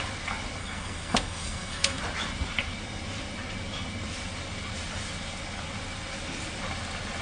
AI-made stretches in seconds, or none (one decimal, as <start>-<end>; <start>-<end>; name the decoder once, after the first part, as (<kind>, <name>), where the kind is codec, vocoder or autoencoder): 0.6-2.0 (codec, SNAC)